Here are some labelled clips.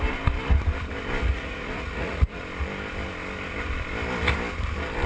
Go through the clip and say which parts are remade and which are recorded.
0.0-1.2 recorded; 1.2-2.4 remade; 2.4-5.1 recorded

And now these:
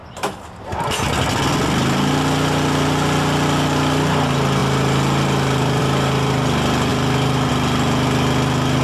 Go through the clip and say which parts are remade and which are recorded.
0.0-8.8 recorded

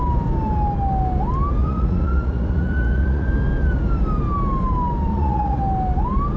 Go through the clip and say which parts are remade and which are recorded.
0.0-1.6 recorded; 1.6-3.3 remade; 3.3-5.1 recorded; 5.1-5.6 remade; 5.6-6.4 recorded

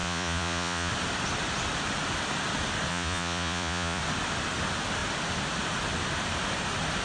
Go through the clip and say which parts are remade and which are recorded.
0.0-0.9 remade; 0.9-2.9 recorded; 2.9-4.0 remade; 4.0-7.0 recorded

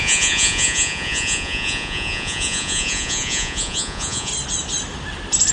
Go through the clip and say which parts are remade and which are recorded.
0.0-4.3 remade; 4.3-5.5 recorded

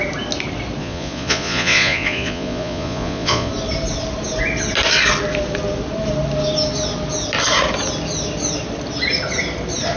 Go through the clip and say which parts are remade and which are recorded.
0.0-0.8 recorded; 0.8-3.5 remade; 3.5-10.0 recorded

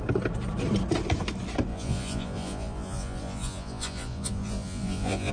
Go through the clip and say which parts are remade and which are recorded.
0.0-1.7 recorded; 1.7-5.3 remade